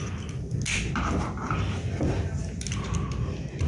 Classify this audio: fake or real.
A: real